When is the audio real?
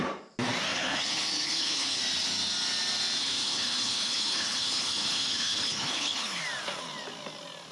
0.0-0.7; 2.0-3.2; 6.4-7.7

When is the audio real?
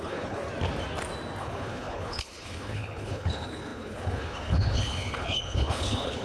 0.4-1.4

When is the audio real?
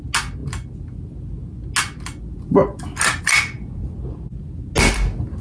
0.0-5.4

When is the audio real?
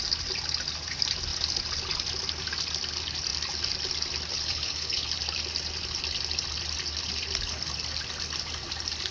0.0-4.3; 5.1-9.1